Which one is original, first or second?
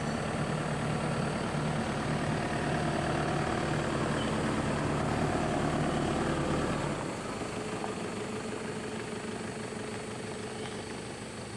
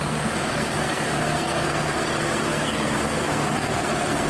first